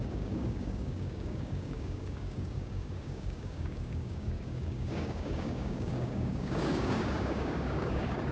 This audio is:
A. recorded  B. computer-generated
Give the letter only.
B